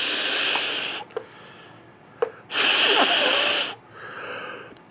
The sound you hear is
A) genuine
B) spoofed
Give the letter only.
A